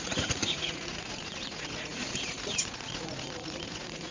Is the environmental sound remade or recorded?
remade